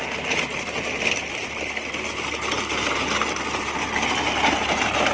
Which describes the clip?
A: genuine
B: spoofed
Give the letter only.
A